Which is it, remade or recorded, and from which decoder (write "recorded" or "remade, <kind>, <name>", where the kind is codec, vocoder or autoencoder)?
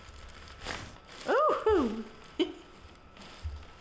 recorded